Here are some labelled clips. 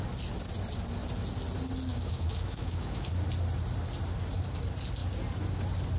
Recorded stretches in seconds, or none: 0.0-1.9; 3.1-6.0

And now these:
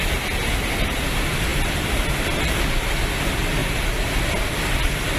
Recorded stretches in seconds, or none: 0.0-1.5; 2.6-5.2

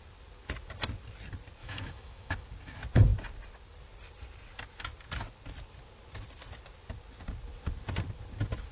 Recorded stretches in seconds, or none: 0.0-1.6; 2.3-8.7

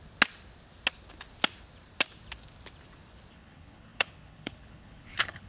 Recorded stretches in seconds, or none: 0.0-3.3